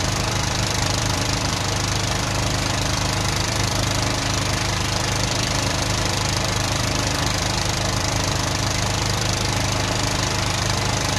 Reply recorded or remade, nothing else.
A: remade